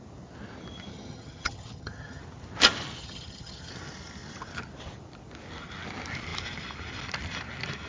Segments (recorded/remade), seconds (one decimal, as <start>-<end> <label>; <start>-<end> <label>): 0.0-0.9 recorded; 0.9-2.2 remade; 2.2-3.0 recorded; 3.0-3.7 remade; 3.7-7.9 recorded